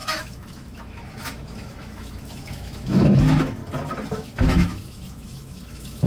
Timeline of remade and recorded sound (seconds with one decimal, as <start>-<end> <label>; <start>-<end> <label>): 0.0-3.6 remade; 3.6-4.1 recorded; 4.1-6.1 remade